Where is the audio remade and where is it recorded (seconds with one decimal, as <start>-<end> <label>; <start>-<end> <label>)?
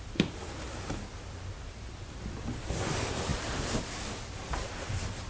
0.0-5.3 recorded